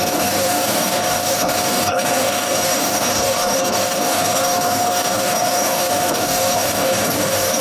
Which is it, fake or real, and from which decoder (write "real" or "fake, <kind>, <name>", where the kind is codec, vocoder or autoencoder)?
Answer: fake, codec, DAC